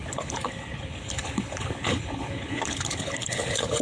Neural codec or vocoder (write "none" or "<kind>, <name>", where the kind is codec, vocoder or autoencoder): codec, HILCodec